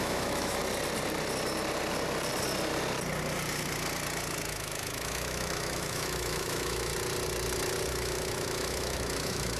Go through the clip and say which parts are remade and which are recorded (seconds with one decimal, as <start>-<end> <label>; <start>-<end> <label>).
0.0-0.6 remade; 0.6-4.5 recorded; 4.5-6.9 remade; 6.9-7.9 recorded; 7.9-9.6 remade